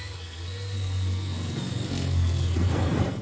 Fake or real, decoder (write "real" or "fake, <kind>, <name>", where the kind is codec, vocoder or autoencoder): fake, codec, SNAC